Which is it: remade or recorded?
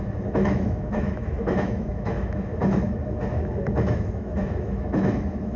remade